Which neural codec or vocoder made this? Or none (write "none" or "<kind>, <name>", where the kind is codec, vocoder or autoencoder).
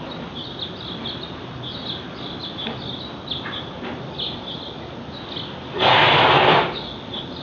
none